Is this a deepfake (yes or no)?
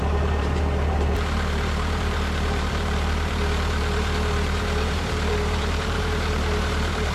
yes